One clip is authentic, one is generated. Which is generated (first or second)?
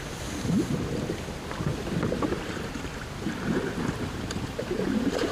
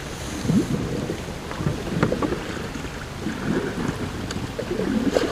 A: first